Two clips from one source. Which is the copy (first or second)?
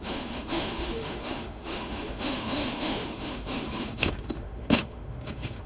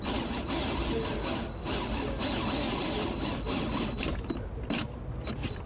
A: first